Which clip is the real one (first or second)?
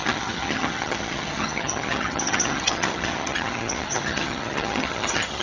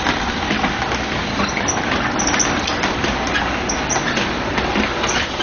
second